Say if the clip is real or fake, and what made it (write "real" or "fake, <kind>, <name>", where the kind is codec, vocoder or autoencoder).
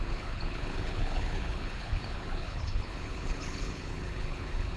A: fake, codec, HILCodec